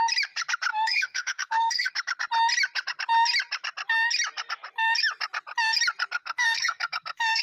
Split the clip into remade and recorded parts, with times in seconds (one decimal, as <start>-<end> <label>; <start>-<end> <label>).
0.0-0.7 recorded; 0.7-1.9 remade; 1.9-6.2 recorded; 6.2-7.4 remade